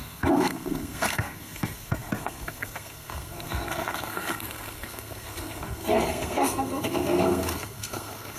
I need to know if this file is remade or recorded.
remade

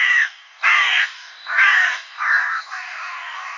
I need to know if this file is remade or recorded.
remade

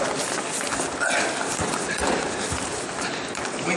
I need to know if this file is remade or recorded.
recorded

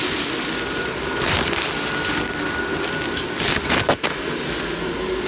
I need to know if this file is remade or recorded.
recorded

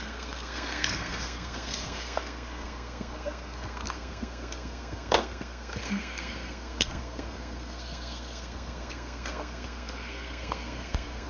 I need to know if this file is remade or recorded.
remade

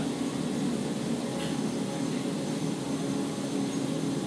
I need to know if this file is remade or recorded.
recorded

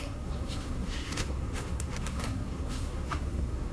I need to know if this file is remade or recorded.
remade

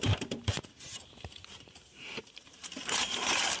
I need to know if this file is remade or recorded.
remade